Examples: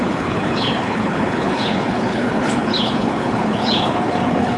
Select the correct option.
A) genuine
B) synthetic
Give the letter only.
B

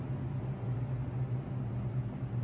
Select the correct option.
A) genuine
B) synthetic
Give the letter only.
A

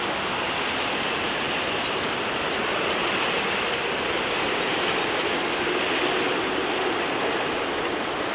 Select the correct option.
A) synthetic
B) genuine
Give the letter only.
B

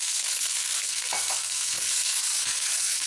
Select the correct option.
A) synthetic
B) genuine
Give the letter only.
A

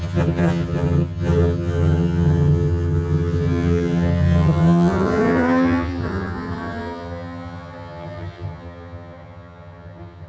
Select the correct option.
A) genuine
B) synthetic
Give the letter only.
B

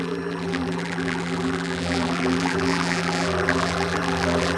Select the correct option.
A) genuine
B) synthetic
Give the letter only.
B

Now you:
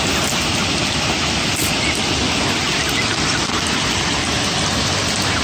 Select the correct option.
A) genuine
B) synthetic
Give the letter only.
A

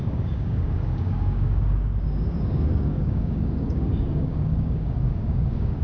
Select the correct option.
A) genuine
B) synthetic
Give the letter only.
B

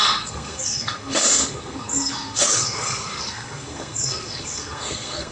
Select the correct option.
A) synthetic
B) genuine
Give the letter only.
A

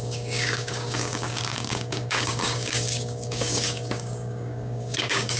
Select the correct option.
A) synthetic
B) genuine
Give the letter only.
A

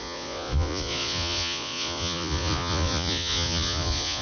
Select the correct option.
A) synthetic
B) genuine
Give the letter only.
A